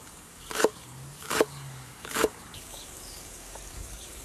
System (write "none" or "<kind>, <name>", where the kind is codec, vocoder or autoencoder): codec, DAC